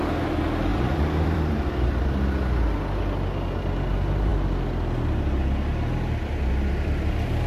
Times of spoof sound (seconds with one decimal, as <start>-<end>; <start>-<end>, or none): 0.7-2.1